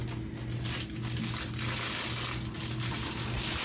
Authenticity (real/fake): real